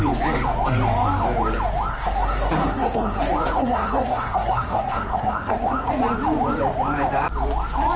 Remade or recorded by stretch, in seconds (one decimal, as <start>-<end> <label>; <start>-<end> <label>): 0.0-1.9 recorded; 1.9-3.2 remade; 3.2-3.6 recorded; 3.6-5.9 remade; 5.9-8.0 recorded